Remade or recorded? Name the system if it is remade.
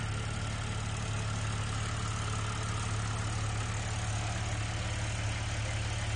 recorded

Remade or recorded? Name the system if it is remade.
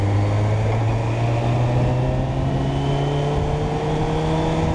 recorded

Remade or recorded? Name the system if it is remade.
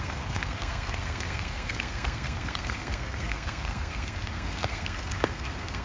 remade, codec, SNAC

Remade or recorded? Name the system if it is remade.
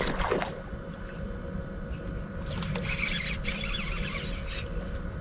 recorded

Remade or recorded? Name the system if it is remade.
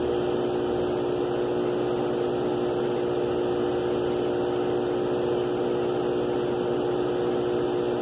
recorded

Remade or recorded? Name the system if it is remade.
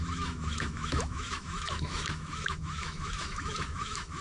remade, autoencoder, DAC-VAE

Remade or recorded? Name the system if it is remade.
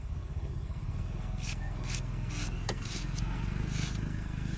remade, codec, SNAC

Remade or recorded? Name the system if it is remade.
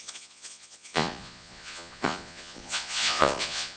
remade, vocoder, Vocos